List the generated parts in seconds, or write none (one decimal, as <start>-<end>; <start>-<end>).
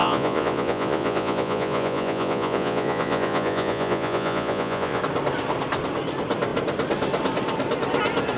0.0-5.0